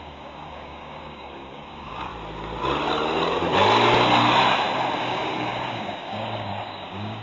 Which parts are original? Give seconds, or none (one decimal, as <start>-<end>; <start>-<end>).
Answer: 2.1-5.0